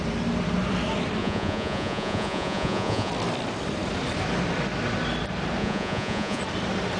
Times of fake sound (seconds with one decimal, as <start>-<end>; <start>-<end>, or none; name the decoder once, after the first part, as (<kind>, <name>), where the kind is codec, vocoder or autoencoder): 1.2-3.1 (vocoder, Vocos); 5.6-6.4